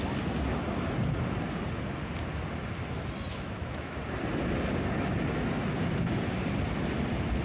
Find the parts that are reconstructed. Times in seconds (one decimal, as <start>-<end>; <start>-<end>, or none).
3.3-4.0